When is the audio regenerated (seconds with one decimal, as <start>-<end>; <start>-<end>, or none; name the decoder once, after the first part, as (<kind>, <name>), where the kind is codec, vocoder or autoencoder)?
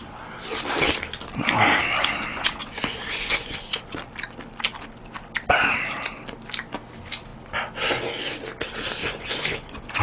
2.3-3.8 (vocoder, Vocos); 9.0-10.0